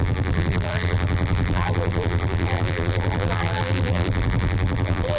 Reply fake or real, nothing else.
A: fake